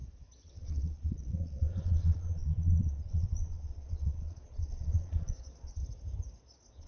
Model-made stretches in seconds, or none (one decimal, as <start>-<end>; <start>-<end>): 0.5-5.8; 6.4-6.9